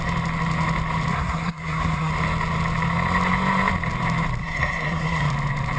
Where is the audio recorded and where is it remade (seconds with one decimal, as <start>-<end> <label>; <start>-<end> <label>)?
0.0-1.1 recorded; 1.1-2.1 remade; 2.1-4.4 recorded; 4.4-5.3 remade; 5.3-5.8 recorded